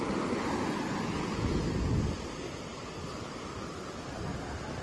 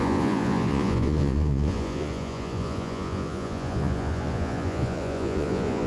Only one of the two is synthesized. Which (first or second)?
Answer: second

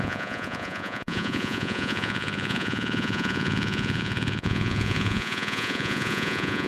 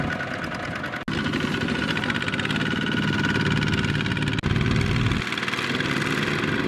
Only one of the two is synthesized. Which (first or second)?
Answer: first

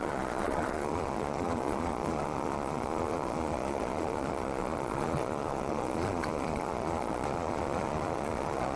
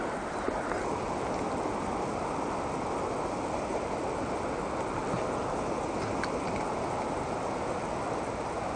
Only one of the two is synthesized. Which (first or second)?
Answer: first